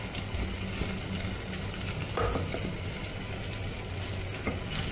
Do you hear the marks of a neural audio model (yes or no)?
no